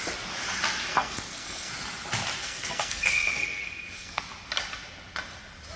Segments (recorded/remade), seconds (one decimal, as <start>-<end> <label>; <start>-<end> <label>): 0.0-0.9 recorded; 0.9-1.7 remade; 1.7-2.4 recorded; 2.4-4.2 remade; 4.2-5.8 recorded